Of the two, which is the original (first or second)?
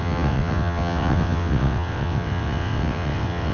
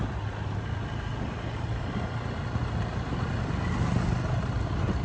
second